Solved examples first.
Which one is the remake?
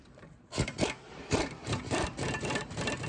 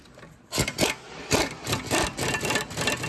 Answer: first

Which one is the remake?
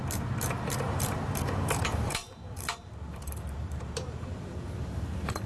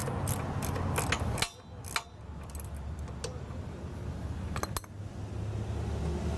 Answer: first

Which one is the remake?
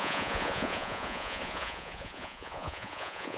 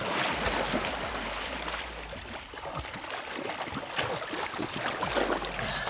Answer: first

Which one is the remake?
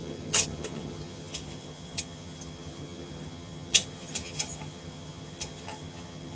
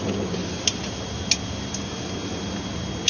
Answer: first